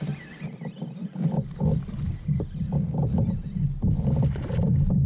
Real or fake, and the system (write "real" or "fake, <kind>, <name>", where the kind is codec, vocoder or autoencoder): fake, vocoder, BigVGAN v2